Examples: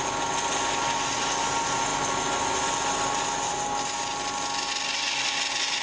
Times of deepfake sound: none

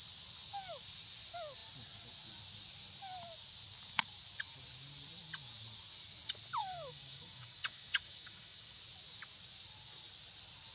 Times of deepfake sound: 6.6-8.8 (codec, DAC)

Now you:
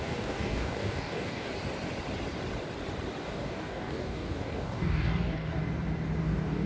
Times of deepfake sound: 0.0-1.5 (codec, DAC); 3.2-5.6; 6.2-6.7

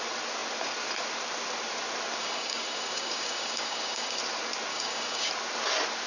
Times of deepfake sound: 2.2-4.2 (codec, DAC); 4.7-5.3

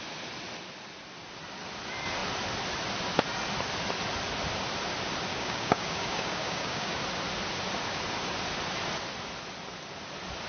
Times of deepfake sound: 5.3-7.0 (codec, DAC)

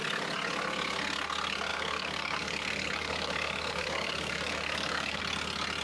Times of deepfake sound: 1.7-5.2 (codec, DAC)

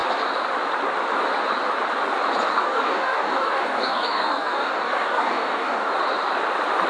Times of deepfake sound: 2.5-5.9 (codec, DAC)